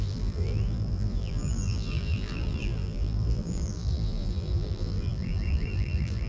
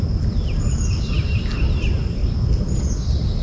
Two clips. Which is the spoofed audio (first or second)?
first